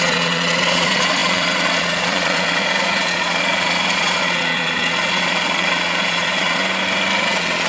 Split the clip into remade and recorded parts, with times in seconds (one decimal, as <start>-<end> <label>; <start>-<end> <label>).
0.0-6.6 remade; 6.6-7.2 recorded; 7.2-7.7 remade